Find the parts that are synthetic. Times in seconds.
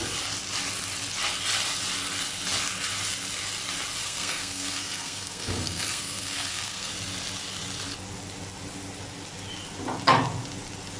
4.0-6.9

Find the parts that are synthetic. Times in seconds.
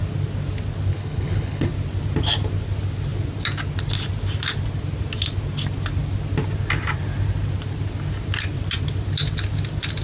0.9-1.7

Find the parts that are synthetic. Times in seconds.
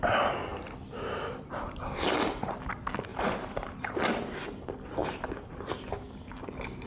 3.1-3.9; 5.0-5.7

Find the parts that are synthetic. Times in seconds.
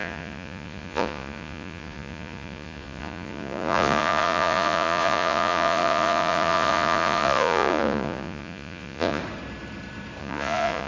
0.0-9.2; 10.2-10.9